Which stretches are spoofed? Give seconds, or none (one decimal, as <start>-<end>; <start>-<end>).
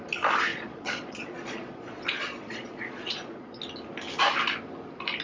0.5-3.6